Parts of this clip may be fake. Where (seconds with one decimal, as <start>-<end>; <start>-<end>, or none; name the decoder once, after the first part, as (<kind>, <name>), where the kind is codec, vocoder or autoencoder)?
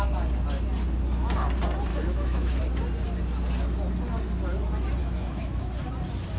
1.9-2.6 (autoencoder, DAC-VAE); 5.0-5.7